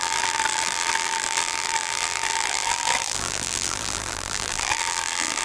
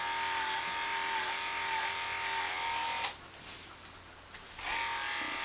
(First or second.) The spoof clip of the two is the first